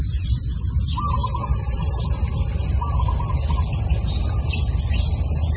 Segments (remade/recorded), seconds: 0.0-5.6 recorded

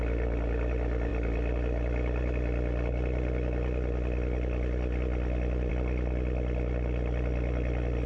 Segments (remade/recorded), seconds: 0.0-8.1 recorded

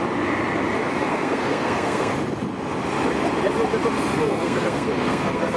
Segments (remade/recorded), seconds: 0.0-1.1 recorded; 1.1-2.1 remade; 2.1-4.1 recorded; 4.1-5.6 remade

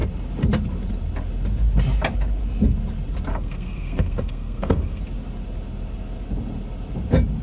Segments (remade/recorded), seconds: 0.0-3.3 recorded; 3.3-5.0 remade; 5.0-7.4 recorded

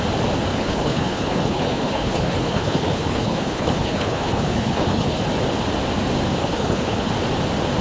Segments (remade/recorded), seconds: 0.0-0.5 recorded; 0.5-5.2 remade; 5.2-6.4 recorded; 6.4-7.1 remade; 7.1-7.8 recorded

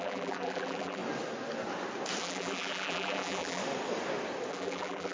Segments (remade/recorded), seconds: 0.0-1.0 remade; 1.0-2.2 recorded; 2.2-3.6 remade; 3.6-4.5 recorded; 4.5-5.1 remade

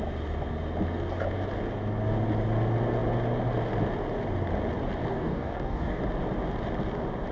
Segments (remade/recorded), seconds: 0.0-5.1 recorded; 5.1-6.0 remade; 6.0-7.3 recorded